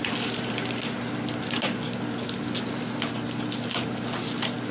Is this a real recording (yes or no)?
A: yes